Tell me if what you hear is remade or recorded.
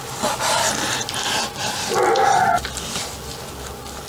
recorded